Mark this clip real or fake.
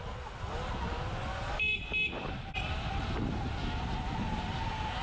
real